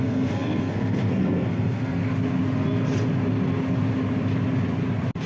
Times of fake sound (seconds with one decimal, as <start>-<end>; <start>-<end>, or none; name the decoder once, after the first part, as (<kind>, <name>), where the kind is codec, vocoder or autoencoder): 0.0-2.0 (codec, SNAC)